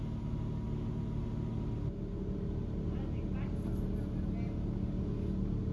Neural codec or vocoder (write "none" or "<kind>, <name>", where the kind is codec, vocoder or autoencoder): none